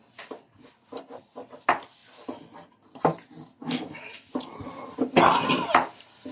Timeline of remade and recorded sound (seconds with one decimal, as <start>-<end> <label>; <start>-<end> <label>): 0.0-3.6 recorded; 3.6-4.3 remade; 4.3-6.3 recorded